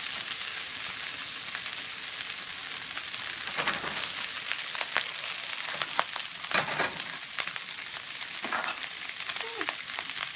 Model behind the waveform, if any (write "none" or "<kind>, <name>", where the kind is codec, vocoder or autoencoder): none